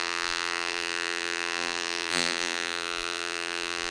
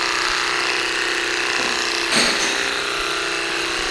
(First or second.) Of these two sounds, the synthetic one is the first